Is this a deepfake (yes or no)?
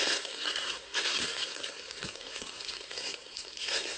yes